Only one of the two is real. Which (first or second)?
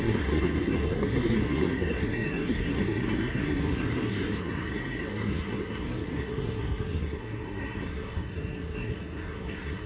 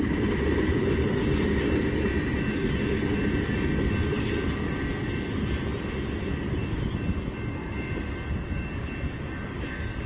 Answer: second